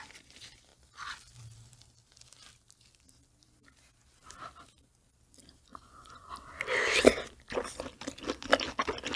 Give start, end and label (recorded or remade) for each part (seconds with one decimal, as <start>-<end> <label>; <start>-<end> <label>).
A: 0.0-5.7 recorded; 5.7-6.3 remade; 6.3-9.2 recorded